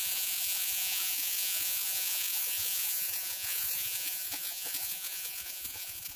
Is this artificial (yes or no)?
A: yes